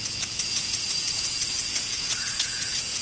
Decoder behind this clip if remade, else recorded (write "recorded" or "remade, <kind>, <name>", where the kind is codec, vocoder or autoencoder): remade, vocoder, Vocos